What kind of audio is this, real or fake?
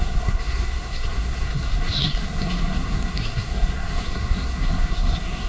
fake